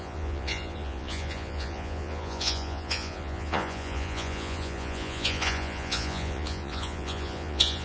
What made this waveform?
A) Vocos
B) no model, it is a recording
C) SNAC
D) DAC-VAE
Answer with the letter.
A